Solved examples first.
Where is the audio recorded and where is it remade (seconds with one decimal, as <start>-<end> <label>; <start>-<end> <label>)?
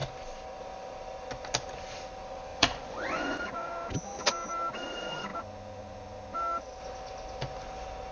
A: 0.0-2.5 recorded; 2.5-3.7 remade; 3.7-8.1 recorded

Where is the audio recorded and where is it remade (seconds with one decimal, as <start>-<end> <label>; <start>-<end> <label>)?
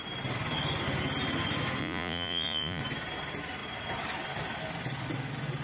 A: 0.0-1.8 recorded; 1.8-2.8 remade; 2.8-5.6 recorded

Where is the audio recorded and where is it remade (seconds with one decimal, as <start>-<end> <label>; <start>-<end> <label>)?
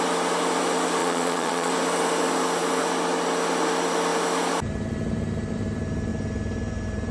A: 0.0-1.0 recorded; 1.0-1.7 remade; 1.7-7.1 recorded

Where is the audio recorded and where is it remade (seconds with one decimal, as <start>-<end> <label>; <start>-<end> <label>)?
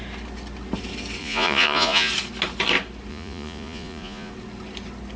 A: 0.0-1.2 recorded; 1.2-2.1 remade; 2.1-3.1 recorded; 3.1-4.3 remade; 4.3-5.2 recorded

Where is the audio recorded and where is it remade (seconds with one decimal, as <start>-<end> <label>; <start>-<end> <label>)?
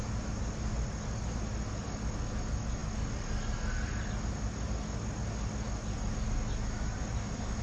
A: 0.0-7.6 recorded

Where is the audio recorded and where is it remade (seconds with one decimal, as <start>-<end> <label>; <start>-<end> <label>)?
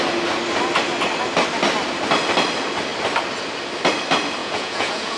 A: 0.0-4.4 recorded; 4.4-5.2 remade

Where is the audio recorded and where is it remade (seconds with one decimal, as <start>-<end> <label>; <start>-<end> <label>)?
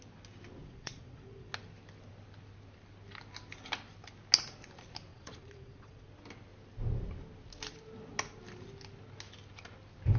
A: 0.0-0.6 recorded; 0.6-1.5 remade; 1.5-5.1 recorded; 5.1-6.1 remade; 6.1-10.2 recorded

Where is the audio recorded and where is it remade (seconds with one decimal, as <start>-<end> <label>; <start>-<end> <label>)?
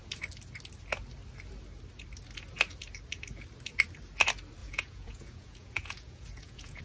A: 0.0-4.6 recorded; 4.6-6.8 remade